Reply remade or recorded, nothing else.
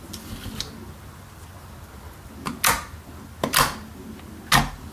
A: recorded